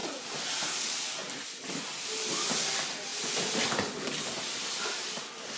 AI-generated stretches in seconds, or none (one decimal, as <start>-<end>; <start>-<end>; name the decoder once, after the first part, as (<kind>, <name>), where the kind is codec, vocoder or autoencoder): 1.2-1.8 (vocoder, BigVGAN v2); 3.1-4.1